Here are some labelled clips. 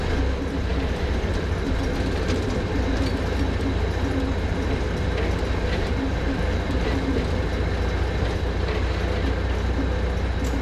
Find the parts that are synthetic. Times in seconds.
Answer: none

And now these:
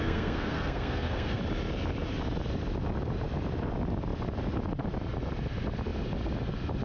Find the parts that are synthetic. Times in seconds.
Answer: 0.0-1.4 (codec, SNAC)

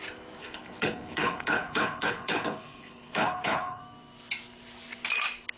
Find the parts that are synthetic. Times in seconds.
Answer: 0.4-3.8 (codec, HILCodec)

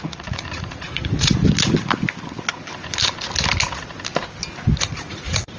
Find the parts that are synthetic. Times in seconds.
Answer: 0.0-1.4 (vocoder, Vocos); 4.8-5.6

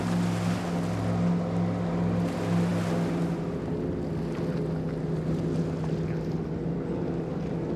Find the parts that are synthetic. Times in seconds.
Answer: none

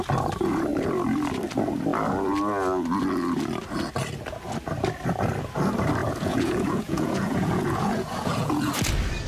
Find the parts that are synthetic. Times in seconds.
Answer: 6.0-8.7 (vocoder, Vocos)